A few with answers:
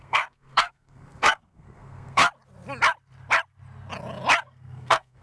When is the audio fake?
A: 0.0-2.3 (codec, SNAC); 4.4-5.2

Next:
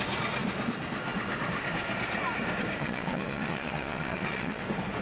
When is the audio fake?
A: 2.8-4.6 (vocoder, Vocos)

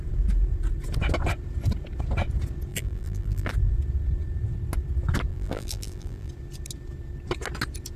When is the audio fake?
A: 2.7-3.5 (vocoder, BigVGAN v2); 5.3-6.3

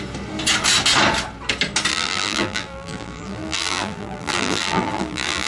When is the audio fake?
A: 1.9-5.5 (vocoder, BigVGAN v2)